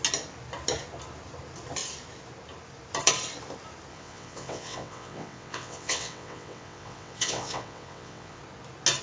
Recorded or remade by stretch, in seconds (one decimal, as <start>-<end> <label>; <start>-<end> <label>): 0.0-3.9 recorded; 3.9-8.4 remade; 8.4-9.0 recorded